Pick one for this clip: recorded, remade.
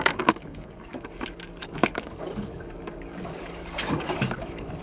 remade